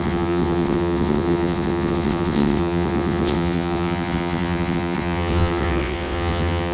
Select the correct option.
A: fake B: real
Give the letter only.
A